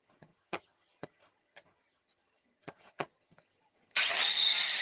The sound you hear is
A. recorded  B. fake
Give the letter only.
B